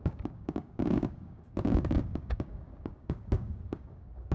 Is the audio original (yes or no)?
no